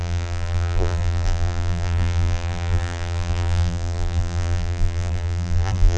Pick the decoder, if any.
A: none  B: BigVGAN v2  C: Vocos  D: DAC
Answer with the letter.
B